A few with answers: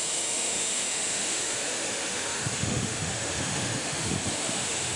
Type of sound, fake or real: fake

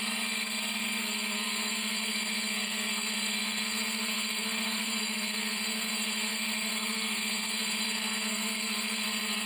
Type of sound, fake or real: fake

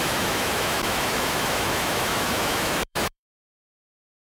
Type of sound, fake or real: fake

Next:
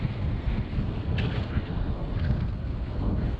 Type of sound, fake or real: fake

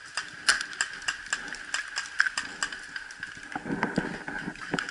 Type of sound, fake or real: real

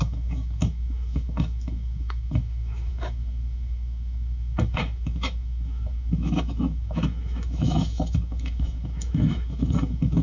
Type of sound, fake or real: fake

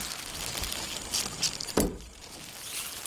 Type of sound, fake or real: real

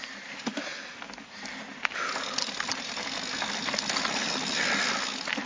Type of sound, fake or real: real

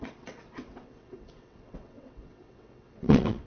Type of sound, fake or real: fake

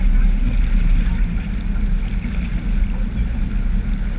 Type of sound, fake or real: real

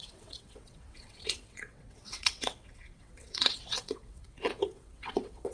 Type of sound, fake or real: fake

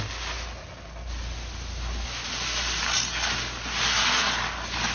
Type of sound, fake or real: real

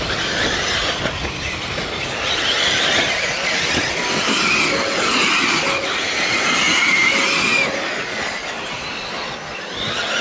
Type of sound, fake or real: real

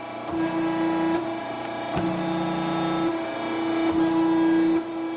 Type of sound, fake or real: real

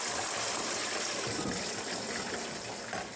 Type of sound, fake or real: real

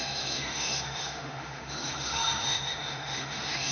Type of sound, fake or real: fake